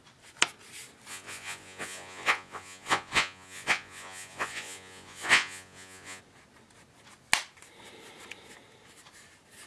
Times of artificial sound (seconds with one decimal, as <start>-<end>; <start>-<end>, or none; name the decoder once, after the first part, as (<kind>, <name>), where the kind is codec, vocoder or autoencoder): 1.1-6.2 (vocoder, Vocos)